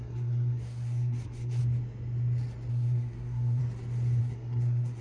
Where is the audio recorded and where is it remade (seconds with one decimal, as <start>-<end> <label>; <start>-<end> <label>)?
0.0-1.6 remade; 1.6-2.7 recorded; 2.7-3.6 remade; 3.6-4.2 recorded; 4.2-5.0 remade